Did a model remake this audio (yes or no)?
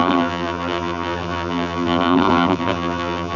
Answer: yes